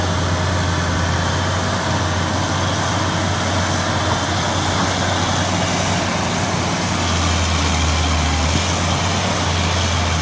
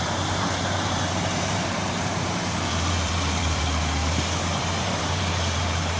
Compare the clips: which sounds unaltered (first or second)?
first